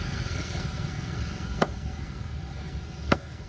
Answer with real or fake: fake